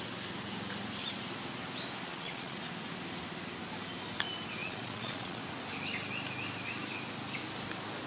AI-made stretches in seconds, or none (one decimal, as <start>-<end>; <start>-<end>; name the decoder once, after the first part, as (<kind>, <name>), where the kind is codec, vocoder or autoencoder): 2.1-2.6 (vocoder, Vocos); 4.6-5.4